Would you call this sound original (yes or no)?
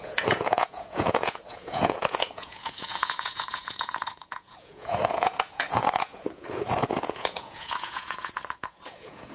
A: no